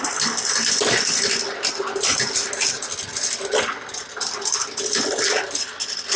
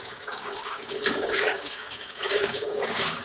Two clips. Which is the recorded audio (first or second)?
first